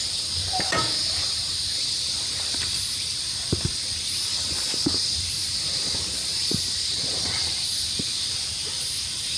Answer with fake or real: fake